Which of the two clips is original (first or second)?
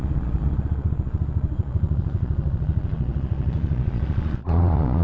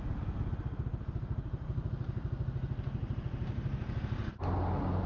second